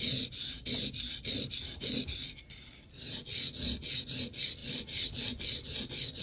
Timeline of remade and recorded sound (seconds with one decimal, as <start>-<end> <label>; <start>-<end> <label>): 0.0-4.6 recorded; 4.6-6.2 remade